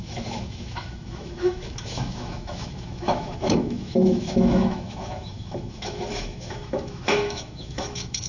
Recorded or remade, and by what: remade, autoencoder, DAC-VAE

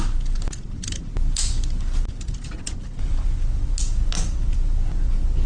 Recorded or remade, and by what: recorded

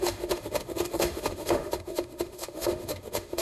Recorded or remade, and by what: remade, autoencoder, DAC-VAE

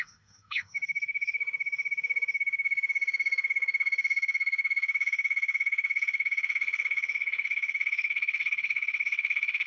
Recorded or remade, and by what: remade, autoencoder, DAC-VAE